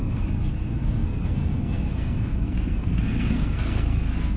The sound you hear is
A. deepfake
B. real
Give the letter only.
A